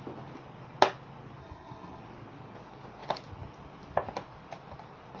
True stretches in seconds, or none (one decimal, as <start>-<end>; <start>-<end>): 0.0-1.4; 2.0-5.2